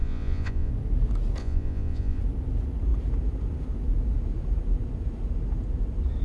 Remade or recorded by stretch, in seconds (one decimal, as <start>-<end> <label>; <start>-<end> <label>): 0.0-0.7 remade; 0.7-1.4 recorded; 1.4-2.2 remade; 2.2-6.2 recorded